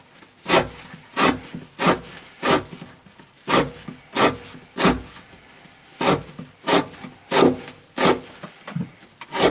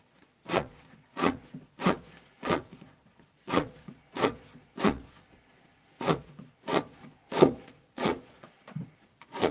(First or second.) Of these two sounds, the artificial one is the second